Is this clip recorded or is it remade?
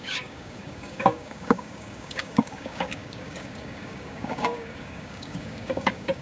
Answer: remade